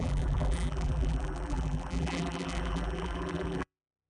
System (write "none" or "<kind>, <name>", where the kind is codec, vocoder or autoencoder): vocoder, BigVGAN v2